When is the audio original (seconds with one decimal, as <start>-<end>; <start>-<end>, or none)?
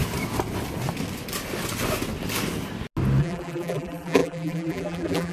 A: 0.0-3.2